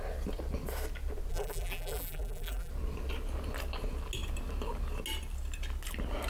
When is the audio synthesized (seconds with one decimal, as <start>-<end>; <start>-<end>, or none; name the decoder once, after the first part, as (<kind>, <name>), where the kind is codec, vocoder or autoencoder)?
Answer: 1.3-2.7 (vocoder, BigVGAN v2)